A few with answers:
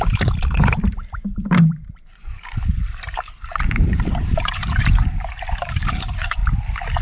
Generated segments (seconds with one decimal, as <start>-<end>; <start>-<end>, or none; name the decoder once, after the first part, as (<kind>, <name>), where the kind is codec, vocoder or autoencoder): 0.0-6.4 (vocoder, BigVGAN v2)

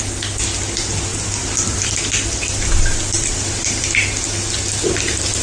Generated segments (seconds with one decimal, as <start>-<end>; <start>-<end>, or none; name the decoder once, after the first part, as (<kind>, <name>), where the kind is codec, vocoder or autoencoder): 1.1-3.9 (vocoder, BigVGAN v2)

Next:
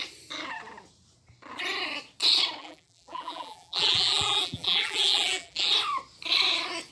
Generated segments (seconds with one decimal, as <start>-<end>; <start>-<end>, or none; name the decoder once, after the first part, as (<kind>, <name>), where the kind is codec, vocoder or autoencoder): 2.6-5.7 (vocoder, BigVGAN v2)